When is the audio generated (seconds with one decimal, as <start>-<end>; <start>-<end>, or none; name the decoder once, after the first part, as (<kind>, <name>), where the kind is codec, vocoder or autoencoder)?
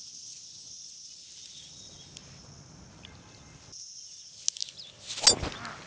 none